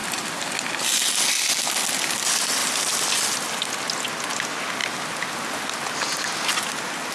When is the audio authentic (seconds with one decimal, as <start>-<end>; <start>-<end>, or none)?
0.0-7.1